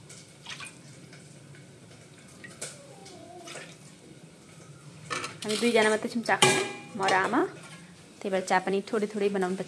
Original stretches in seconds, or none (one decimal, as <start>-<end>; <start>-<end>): 3.0-3.5